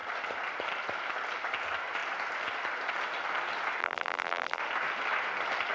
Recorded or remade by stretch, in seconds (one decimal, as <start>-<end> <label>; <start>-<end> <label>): 0.0-3.8 recorded; 3.8-4.6 remade; 4.6-5.7 recorded